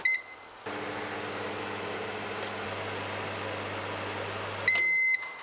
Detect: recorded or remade recorded